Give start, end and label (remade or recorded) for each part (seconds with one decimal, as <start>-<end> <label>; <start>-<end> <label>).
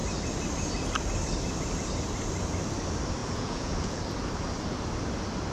0.0-3.2 recorded; 3.2-4.0 remade; 4.0-5.5 recorded